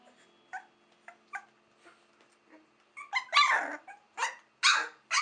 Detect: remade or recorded recorded